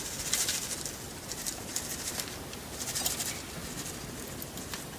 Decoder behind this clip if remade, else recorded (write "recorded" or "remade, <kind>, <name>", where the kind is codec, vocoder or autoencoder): recorded